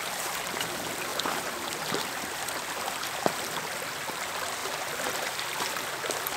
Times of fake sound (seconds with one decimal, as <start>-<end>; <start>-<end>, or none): 1.1-3.0; 4.6-5.9